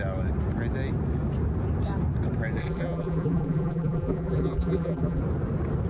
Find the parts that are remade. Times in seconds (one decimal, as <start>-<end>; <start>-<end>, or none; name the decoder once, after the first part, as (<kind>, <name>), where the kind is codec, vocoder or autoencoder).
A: 2.6-5.2 (vocoder, BigVGAN v2)